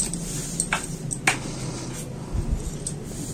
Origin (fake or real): real